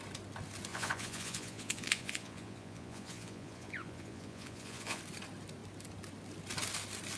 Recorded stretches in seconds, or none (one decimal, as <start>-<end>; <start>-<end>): 0.0-0.7; 5.0-7.2